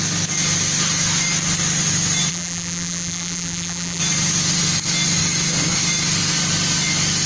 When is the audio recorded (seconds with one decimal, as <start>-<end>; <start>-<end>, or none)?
0.0-2.3; 4.0-7.3